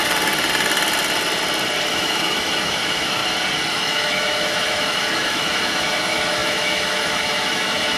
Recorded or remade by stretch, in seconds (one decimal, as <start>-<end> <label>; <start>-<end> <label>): 0.0-1.9 recorded; 1.9-3.2 remade; 3.2-3.7 recorded; 3.7-8.0 remade